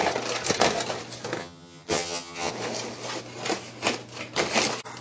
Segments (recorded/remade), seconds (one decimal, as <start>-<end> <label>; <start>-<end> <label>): 0.0-1.4 recorded; 1.4-2.5 remade; 2.5-5.0 recorded